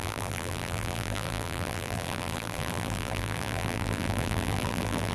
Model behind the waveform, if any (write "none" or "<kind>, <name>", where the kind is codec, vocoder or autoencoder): vocoder, BigVGAN v2